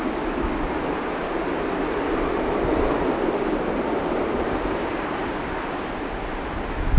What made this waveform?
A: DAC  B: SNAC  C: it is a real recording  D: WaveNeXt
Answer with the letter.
C